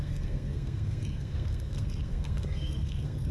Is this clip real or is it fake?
fake